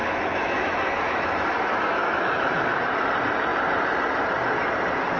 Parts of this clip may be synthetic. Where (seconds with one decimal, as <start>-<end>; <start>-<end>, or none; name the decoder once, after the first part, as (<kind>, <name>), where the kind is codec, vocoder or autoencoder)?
0.0-3.1 (autoencoder, DAC-VAE)